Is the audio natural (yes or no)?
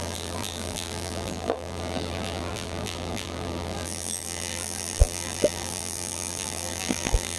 no